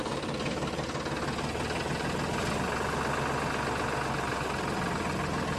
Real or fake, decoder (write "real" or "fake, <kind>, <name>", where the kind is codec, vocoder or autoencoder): real